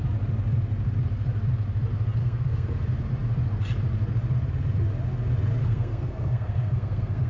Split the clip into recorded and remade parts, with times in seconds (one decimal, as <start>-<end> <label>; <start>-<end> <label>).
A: 0.0-2.2 recorded; 2.2-2.8 remade; 2.8-5.6 recorded; 5.6-7.3 remade